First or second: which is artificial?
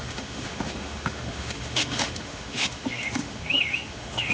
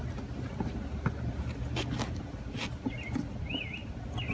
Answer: first